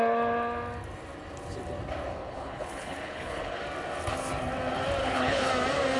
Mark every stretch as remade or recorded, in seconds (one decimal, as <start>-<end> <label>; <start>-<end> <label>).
0.0-2.1 recorded; 2.1-3.6 remade; 3.6-5.0 recorded; 5.0-5.5 remade; 5.5-6.0 recorded